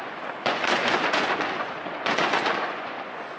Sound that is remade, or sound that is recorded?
remade